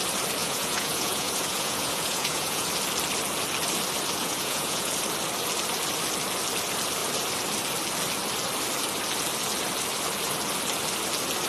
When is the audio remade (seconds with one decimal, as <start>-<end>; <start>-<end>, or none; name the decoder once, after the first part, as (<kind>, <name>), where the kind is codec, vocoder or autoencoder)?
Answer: 0.4-2.7 (vocoder, Vocos); 4.2-4.9

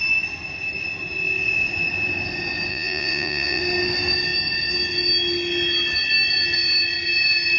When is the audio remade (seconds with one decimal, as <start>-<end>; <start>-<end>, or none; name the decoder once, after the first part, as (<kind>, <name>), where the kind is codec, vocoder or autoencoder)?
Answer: 2.7-3.6 (vocoder, Vocos)